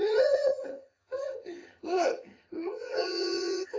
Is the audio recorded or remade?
remade